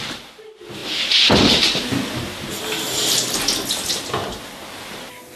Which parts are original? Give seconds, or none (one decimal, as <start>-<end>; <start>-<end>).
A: 0.0-5.4